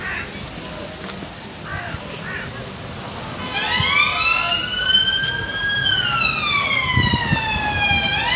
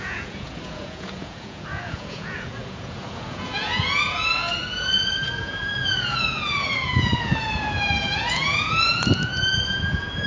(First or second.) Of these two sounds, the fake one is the second